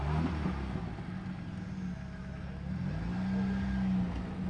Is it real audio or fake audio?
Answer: real